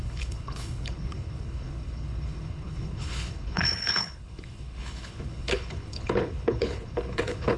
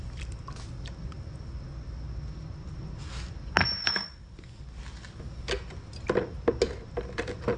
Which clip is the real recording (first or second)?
second